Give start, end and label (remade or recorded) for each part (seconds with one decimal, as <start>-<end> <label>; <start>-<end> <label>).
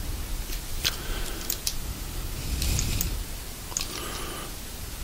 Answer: 0.0-0.7 recorded; 0.7-2.5 remade; 2.5-5.0 recorded